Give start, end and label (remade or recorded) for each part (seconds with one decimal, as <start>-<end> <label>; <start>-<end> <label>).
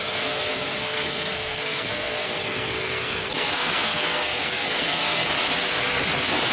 0.0-5.3 remade; 5.3-6.5 recorded